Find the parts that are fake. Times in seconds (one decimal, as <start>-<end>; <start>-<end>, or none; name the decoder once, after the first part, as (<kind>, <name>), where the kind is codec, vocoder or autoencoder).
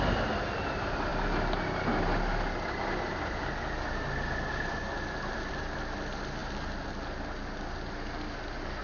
none